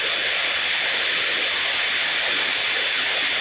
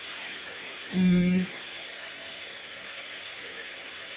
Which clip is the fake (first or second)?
second